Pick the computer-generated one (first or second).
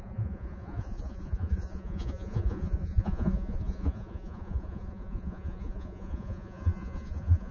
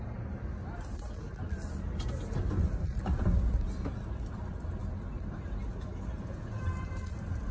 first